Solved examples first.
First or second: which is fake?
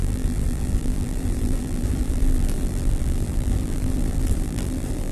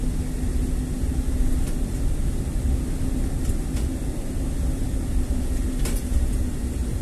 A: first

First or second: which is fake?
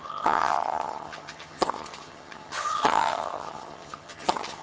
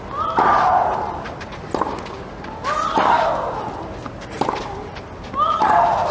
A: first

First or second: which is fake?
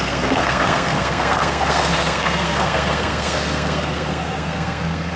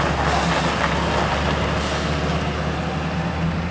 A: first